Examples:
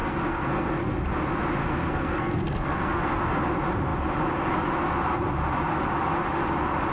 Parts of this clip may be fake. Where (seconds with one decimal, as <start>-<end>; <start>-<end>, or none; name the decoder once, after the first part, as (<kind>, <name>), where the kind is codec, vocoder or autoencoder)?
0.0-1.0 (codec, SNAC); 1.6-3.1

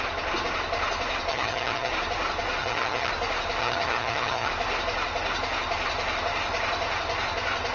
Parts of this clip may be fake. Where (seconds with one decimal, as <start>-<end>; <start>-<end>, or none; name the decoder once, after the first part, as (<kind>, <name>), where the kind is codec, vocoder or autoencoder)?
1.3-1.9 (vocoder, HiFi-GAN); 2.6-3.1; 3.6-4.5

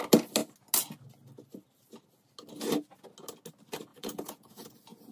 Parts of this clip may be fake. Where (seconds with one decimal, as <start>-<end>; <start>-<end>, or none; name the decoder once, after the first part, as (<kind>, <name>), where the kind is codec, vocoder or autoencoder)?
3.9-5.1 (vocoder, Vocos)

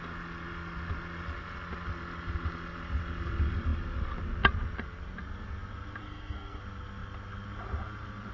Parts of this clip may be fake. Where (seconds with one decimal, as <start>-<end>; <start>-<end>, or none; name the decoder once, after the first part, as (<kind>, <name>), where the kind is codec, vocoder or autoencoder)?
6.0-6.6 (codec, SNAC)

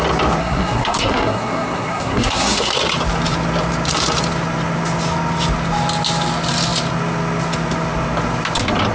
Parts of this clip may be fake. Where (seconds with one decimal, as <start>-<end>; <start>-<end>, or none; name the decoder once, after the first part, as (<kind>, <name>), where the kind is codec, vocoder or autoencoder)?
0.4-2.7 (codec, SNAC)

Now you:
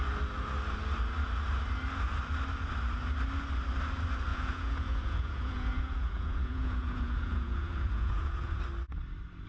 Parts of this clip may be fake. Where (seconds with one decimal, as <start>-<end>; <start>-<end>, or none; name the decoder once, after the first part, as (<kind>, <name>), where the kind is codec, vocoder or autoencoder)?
4.3-8.6 (vocoder, Vocos)

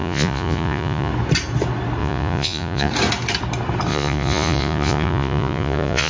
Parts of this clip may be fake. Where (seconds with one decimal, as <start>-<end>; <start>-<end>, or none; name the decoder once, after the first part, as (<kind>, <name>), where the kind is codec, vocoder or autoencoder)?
0.0-1.1 (vocoder, Vocos); 2.0-2.9; 3.9-6.1

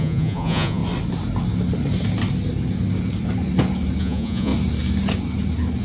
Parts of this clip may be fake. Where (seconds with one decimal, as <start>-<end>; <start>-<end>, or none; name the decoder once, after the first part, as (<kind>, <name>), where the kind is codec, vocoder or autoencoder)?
0.0-0.8 (vocoder, Vocos); 4.0-4.5